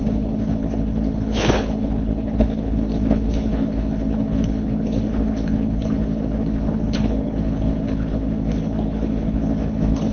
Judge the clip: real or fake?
fake